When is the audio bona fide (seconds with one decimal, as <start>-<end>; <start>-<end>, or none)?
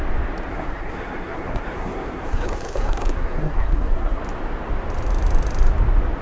0.0-0.5; 4.2-6.2